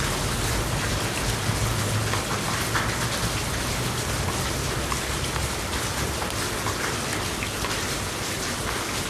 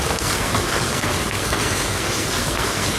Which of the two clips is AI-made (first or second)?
second